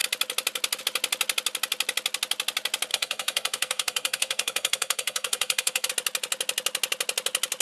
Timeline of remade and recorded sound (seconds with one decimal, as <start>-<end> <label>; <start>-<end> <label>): 0.0-2.9 recorded; 2.9-5.9 remade; 5.9-7.6 recorded